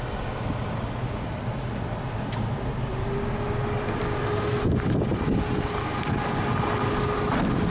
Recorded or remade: recorded